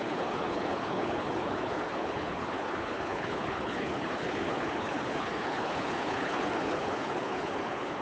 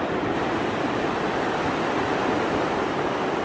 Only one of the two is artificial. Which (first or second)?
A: first